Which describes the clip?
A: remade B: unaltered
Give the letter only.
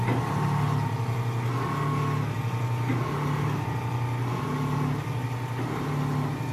B